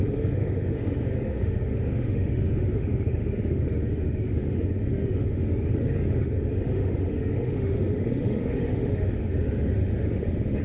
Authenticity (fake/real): fake